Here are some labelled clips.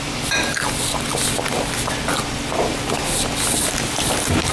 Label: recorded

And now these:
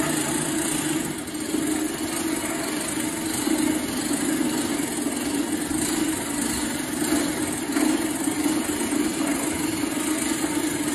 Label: recorded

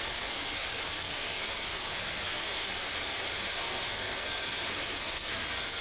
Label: remade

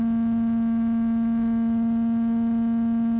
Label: recorded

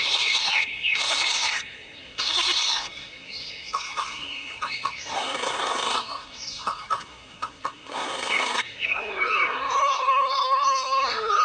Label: remade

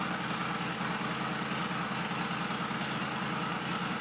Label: recorded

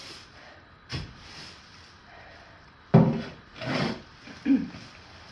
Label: recorded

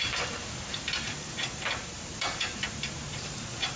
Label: remade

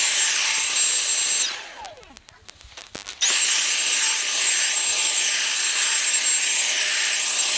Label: recorded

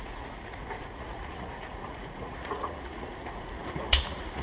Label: remade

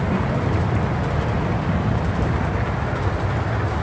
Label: recorded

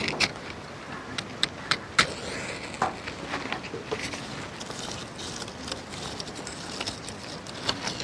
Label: recorded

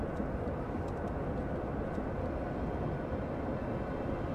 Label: recorded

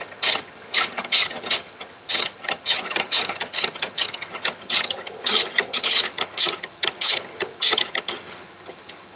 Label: remade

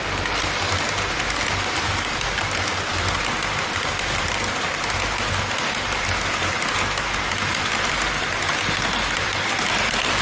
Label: recorded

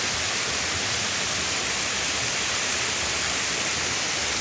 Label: recorded